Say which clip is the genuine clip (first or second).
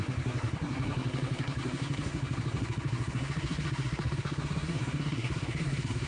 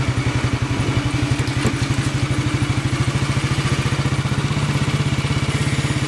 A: second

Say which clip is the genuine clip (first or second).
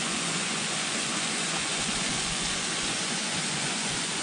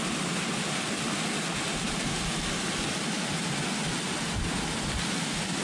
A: second